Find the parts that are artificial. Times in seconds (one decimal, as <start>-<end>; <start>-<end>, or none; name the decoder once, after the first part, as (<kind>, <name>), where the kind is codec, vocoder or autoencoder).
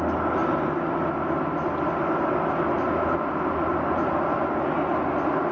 none